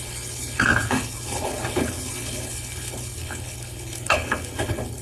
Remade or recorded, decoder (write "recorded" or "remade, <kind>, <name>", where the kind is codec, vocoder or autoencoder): remade, codec, HILCodec